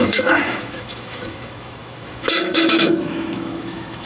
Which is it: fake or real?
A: fake